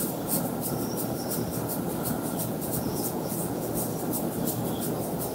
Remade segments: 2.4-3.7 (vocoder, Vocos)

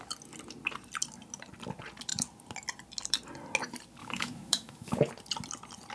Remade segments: 4.0-5.0 (autoencoder, DAC-VAE)

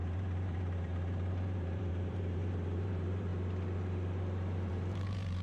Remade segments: 0.0-3.3 (vocoder, BigVGAN v2); 4.7-5.4

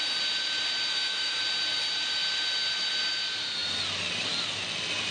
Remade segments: 0.9-1.4 (autoencoder, DAC-VAE)